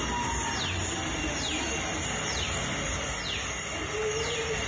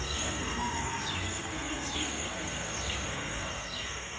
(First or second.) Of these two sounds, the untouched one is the first